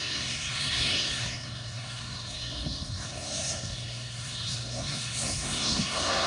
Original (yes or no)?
no